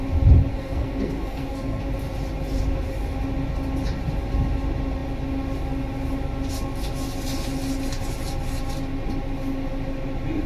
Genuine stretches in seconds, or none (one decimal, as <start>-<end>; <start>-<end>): 0.0-0.5; 1.8-10.5

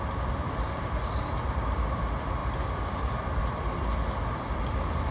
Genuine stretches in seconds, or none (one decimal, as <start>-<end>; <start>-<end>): 0.0-5.1

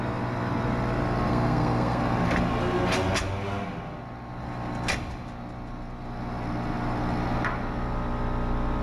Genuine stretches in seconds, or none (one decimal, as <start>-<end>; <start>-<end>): 0.0-1.3; 2.0-8.8

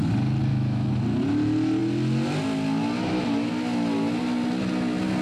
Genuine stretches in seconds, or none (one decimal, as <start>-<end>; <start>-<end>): 0.0-0.5; 1.0-5.2

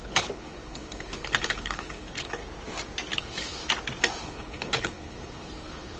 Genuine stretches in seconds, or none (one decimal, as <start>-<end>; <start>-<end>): 2.4-3.2; 3.6-4.2

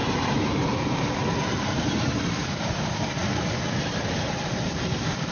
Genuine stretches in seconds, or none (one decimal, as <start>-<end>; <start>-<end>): 3.2-3.9